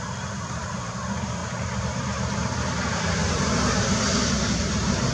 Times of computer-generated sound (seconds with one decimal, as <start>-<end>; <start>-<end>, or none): 0.0-5.1